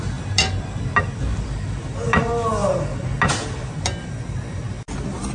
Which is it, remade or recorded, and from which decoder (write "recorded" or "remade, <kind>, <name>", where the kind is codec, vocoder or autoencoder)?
recorded